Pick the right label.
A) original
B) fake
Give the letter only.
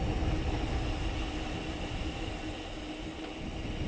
A